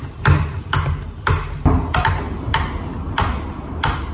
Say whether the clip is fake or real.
real